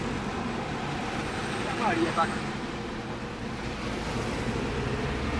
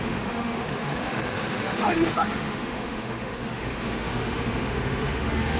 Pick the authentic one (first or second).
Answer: first